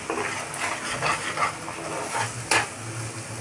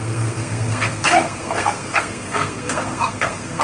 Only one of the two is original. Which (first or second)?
first